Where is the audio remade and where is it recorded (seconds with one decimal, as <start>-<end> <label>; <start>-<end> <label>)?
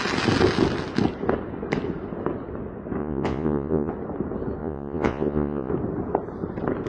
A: 0.0-3.0 recorded; 3.0-3.9 remade; 3.9-4.6 recorded; 4.6-5.7 remade; 5.7-6.9 recorded